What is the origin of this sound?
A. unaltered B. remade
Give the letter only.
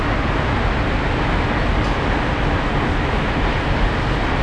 A